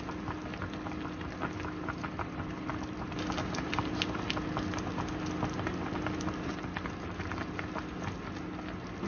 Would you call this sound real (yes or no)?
yes